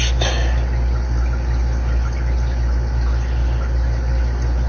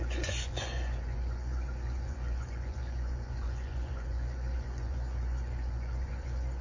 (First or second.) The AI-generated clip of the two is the second